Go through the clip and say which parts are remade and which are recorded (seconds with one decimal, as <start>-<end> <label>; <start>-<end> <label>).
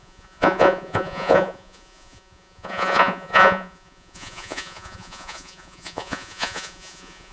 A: 0.0-7.3 remade